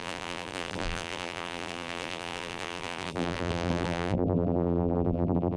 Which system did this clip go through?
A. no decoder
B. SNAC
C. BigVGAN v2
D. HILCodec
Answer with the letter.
C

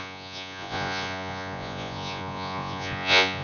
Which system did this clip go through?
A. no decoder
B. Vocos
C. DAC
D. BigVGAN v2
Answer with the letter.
B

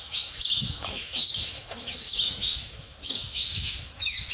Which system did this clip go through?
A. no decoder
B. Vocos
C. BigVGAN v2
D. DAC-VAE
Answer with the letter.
D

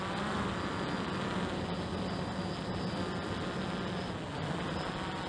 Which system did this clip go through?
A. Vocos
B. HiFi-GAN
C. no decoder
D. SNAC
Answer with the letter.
C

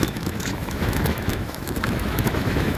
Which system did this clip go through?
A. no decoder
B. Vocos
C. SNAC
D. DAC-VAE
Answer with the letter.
D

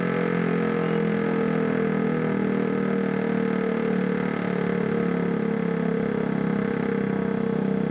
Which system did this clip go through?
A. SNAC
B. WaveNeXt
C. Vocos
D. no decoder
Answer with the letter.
D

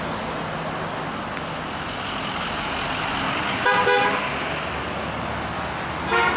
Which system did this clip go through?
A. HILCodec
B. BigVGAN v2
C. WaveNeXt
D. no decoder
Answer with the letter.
D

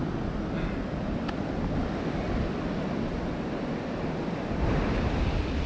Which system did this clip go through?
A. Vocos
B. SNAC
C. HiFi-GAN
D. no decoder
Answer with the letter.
D